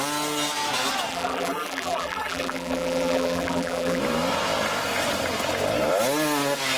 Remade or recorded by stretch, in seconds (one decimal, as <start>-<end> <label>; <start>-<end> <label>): 0.0-1.1 recorded; 1.1-4.0 remade; 4.0-6.8 recorded